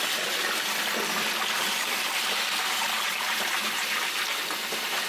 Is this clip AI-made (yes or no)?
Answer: no